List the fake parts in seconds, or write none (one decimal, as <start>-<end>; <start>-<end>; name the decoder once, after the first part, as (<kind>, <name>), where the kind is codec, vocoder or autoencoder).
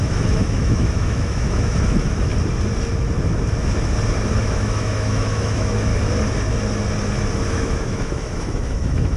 0.0-2.3 (autoencoder, DAC-VAE); 4.4-5.9; 7.5-9.2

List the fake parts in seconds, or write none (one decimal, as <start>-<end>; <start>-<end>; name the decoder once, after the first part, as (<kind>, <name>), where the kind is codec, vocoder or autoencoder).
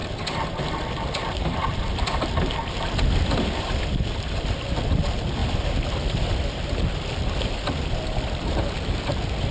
none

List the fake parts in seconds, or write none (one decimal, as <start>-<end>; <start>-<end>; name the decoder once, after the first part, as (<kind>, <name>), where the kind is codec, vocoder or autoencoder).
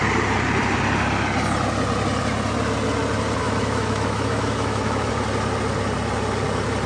3.4-5.1 (autoencoder, DAC-VAE)